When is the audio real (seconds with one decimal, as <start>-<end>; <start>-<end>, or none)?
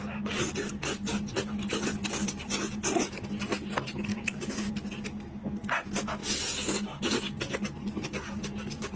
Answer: 0.0-4.1; 4.7-9.0